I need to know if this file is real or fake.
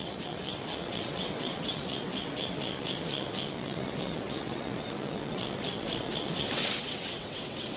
fake